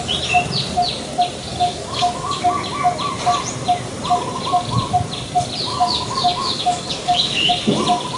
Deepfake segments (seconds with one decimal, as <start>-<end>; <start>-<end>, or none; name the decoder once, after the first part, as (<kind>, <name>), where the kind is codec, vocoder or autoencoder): 1.5-2.7 (codec, DAC); 5.7-7.5